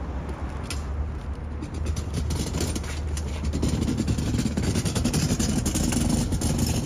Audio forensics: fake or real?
real